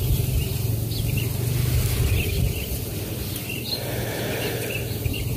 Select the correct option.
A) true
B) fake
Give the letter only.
A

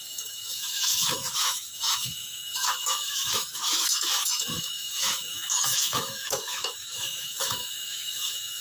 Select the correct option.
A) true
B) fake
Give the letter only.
B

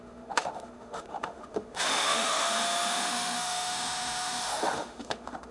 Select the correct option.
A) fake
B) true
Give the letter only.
A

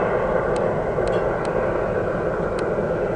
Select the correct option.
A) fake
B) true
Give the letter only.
B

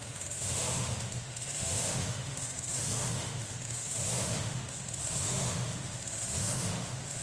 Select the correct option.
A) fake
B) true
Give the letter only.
A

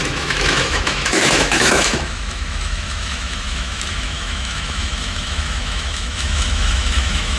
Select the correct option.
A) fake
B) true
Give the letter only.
A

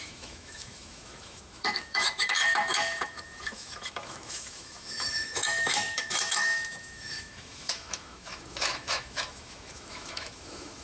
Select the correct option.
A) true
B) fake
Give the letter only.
B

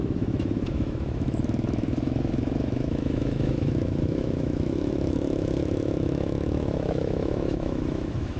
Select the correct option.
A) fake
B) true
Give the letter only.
A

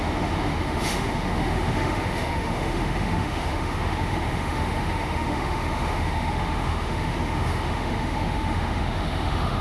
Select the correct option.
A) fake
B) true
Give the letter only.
A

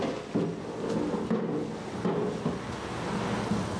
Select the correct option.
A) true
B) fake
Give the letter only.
A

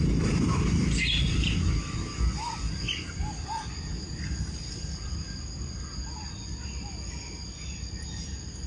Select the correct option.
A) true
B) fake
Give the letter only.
A